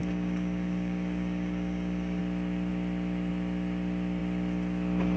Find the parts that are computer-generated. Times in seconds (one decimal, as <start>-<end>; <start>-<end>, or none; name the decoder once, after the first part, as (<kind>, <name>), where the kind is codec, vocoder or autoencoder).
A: 0.0-2.2 (codec, DAC)